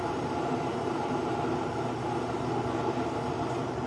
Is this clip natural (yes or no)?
yes